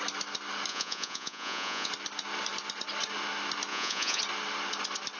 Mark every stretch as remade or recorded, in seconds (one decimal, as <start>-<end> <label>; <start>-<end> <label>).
0.0-0.7 recorded; 0.7-1.9 remade; 1.9-3.7 recorded; 3.7-4.2 remade; 4.2-5.2 recorded